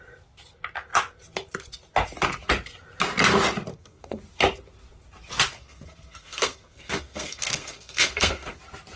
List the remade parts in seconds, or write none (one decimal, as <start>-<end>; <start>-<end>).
3.7-4.2; 5.5-8.6